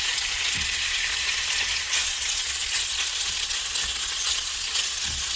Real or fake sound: fake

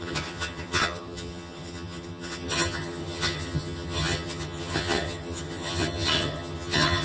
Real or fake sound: fake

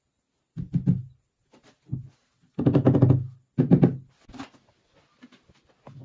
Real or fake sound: real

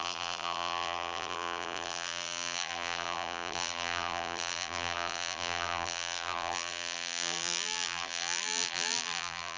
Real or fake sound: fake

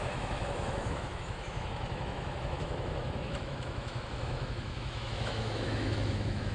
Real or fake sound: fake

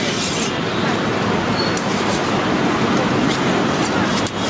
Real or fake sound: real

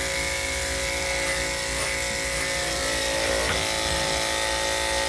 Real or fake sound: real